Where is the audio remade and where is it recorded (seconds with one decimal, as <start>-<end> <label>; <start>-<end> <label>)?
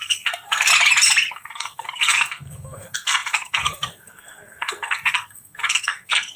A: 0.0-0.7 remade; 0.7-1.3 recorded; 1.3-6.4 remade